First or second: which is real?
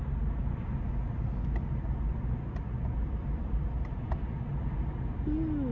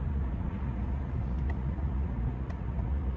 first